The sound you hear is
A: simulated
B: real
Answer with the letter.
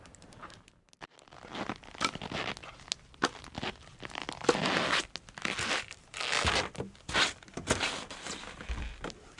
B